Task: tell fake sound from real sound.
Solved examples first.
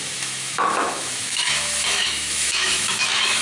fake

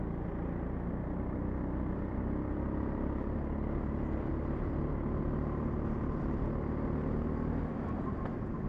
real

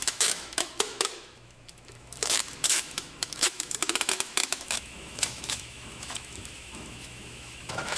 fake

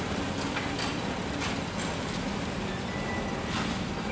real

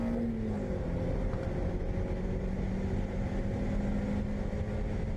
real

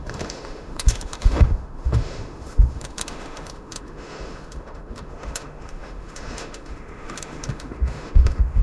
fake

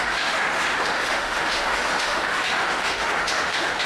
fake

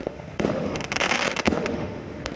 fake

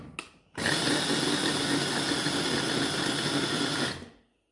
real